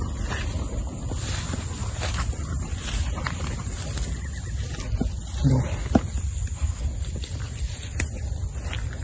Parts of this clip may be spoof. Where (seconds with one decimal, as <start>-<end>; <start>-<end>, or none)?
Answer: 1.8-3.6